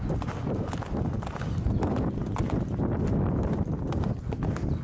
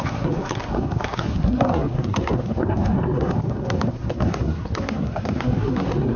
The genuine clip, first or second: first